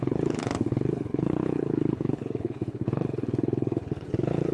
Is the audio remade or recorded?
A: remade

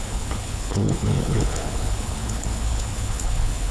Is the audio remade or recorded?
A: remade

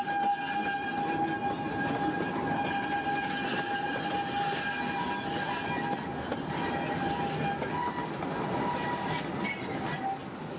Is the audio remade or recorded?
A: recorded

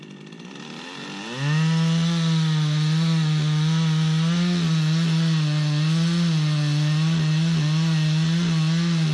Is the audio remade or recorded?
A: recorded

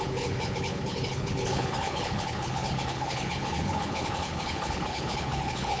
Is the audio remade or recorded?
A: remade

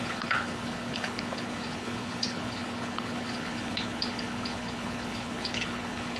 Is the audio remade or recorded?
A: remade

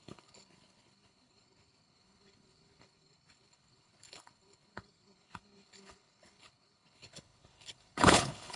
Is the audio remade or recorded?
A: remade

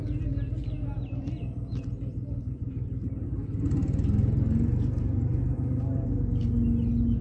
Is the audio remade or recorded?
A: recorded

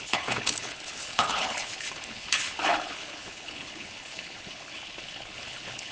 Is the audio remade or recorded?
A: remade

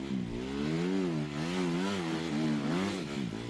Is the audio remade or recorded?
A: recorded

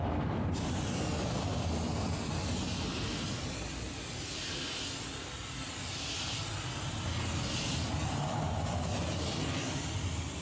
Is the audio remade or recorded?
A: recorded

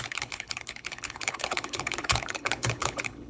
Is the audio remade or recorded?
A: remade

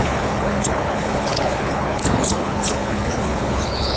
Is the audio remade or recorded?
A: remade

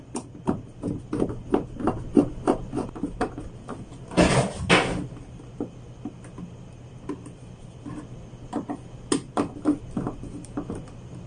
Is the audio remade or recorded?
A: recorded